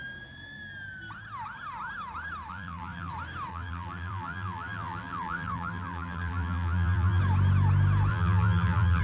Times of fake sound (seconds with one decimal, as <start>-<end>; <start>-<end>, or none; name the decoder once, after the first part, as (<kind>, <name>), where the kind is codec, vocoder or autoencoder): 2.5-3.1 (vocoder, BigVGAN v2); 3.5-7.2; 8.1-9.0